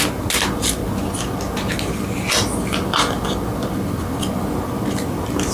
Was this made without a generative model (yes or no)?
yes